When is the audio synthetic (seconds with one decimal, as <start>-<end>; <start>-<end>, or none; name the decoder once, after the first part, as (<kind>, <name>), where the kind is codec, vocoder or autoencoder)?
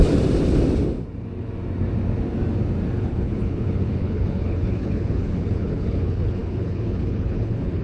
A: 3.0-7.8 (codec, HILCodec)